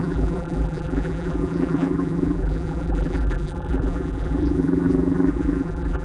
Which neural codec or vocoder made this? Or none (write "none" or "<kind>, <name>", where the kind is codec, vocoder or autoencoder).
vocoder, BigVGAN v2